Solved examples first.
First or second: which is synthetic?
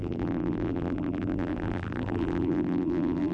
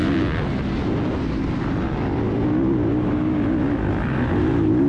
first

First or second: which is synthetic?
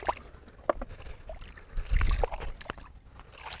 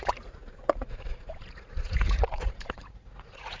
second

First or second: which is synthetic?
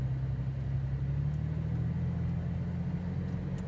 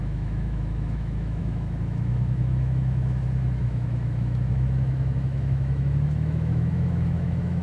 second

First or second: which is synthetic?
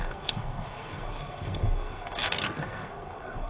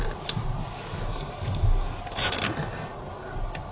first